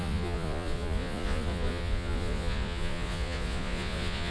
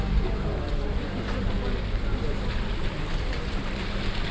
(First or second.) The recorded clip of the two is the second